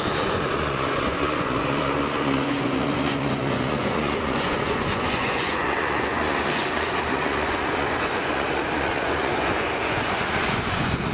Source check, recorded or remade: remade